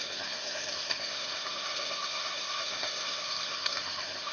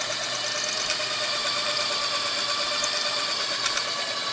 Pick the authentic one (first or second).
second